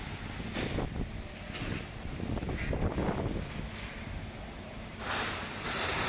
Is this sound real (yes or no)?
yes